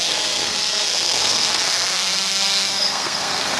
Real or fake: fake